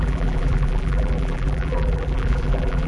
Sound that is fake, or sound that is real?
fake